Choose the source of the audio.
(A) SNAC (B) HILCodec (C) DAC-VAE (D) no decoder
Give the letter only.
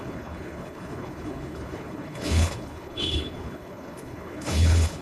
B